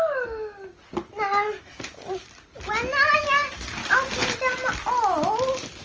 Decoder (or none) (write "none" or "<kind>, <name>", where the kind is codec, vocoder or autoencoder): none